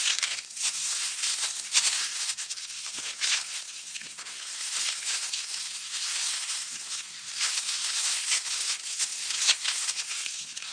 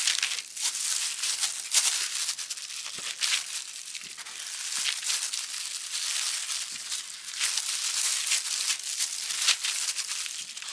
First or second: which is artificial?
first